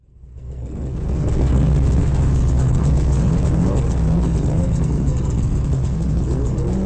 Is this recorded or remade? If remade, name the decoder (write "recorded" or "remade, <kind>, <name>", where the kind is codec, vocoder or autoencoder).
remade, codec, SNAC